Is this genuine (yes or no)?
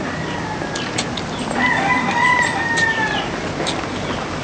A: yes